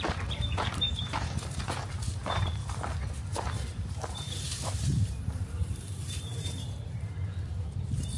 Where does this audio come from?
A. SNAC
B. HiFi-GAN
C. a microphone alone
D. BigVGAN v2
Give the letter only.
D